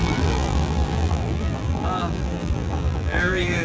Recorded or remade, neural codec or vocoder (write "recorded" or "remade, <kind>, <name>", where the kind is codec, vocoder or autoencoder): remade, vocoder, BigVGAN v2